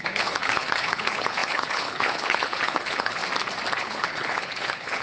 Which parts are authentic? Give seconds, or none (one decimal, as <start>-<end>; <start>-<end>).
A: 3.2-3.8